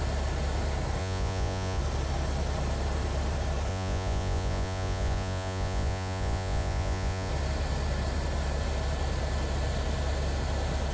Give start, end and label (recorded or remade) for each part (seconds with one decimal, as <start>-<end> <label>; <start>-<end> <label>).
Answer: 0.0-1.0 recorded; 1.0-1.8 remade; 1.8-3.7 recorded; 3.7-7.3 remade; 7.3-10.9 recorded

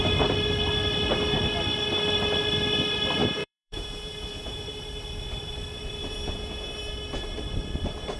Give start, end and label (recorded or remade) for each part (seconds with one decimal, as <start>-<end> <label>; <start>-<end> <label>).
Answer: 0.0-3.2 recorded; 3.2-4.7 remade; 4.7-6.0 recorded; 6.0-6.7 remade; 6.7-8.2 recorded

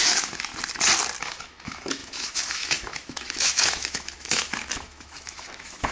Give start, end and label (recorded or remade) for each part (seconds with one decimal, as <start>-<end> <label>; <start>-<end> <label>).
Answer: 0.0-0.5 remade; 0.5-1.2 recorded; 1.2-5.9 remade

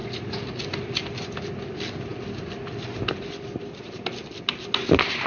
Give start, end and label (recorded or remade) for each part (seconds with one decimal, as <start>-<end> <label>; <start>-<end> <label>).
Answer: 0.0-5.3 recorded

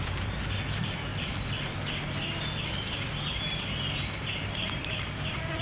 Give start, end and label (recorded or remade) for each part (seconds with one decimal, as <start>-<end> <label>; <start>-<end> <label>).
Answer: 0.0-5.6 recorded

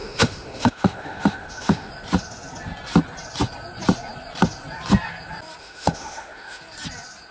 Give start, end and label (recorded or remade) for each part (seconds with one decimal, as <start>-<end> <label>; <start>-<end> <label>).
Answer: 0.0-1.9 remade; 1.9-5.6 recorded; 5.6-6.6 remade; 6.6-7.3 recorded

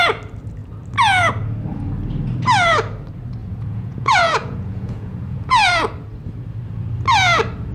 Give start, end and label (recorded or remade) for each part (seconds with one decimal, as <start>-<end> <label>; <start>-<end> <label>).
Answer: 0.0-3.4 recorded; 3.4-5.7 remade; 5.7-7.7 recorded

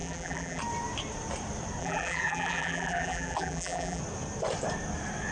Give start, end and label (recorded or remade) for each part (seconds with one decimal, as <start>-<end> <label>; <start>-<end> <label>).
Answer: 0.0-0.6 remade; 0.6-1.8 recorded; 1.8-4.0 remade; 4.0-5.3 recorded